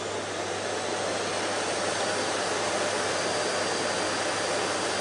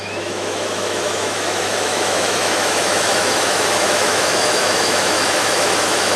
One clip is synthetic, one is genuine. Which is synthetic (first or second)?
second